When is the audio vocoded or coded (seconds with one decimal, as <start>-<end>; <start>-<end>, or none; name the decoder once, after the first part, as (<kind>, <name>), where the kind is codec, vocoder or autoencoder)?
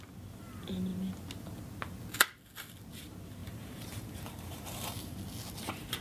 3.4-5.2 (vocoder, BigVGAN v2)